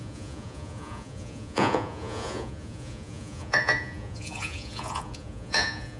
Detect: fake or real fake